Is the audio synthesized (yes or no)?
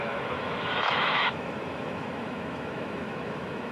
yes